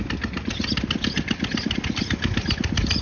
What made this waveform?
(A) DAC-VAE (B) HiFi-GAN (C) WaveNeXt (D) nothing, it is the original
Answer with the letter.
D